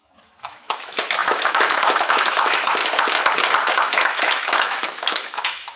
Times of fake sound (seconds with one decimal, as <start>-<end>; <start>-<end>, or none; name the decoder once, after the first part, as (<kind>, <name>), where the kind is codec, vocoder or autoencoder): 0.0-2.8 (autoencoder, DAC-VAE); 3.7-5.8